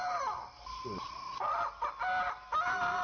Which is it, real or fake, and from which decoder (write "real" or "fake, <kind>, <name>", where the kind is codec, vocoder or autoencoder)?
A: real